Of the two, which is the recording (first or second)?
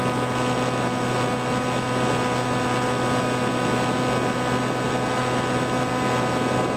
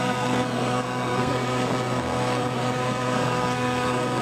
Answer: first